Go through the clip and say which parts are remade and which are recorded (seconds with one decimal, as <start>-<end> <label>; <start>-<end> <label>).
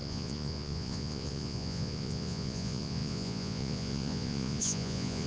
0.0-5.3 remade